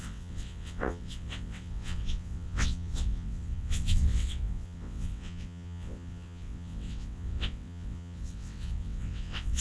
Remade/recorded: remade